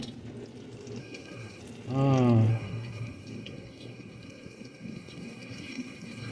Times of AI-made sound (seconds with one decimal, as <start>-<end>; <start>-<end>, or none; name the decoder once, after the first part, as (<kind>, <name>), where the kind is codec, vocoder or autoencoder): 1.0-1.6 (codec, SNAC); 2.5-6.3